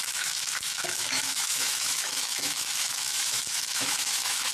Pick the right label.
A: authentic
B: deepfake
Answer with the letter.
B